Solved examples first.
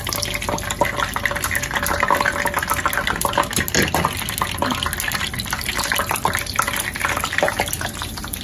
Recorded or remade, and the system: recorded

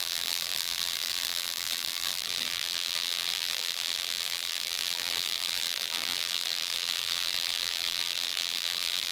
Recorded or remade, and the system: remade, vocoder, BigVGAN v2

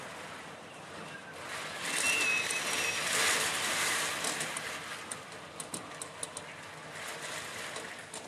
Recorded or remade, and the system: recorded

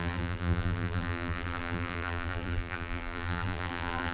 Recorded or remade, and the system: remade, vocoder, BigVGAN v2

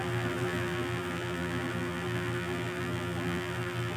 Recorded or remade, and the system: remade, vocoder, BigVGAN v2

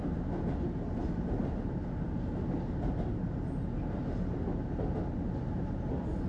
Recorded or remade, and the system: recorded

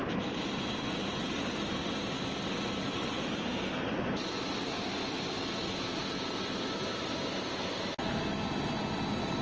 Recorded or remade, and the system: recorded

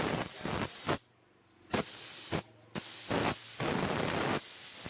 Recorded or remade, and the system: recorded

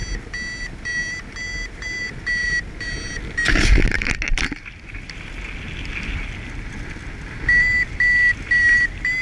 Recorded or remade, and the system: recorded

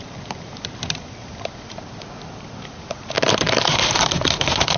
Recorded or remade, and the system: remade, vocoder, BigVGAN v2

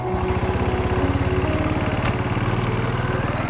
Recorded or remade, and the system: recorded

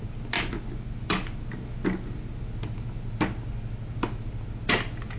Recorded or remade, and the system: recorded